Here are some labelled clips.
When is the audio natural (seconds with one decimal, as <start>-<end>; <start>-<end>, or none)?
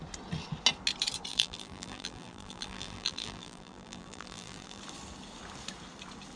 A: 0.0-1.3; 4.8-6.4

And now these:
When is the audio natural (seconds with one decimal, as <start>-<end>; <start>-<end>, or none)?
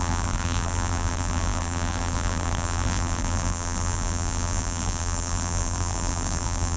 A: none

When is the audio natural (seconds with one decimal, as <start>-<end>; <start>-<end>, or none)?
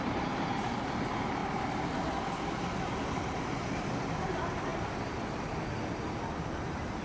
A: 1.4-3.2; 4.7-6.6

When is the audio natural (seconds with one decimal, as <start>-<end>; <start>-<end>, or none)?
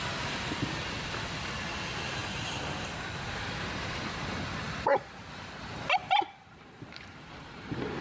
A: 0.0-4.9; 5.6-6.0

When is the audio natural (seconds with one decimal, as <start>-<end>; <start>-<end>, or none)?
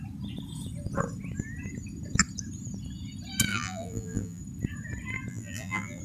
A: 0.0-3.5; 4.4-5.3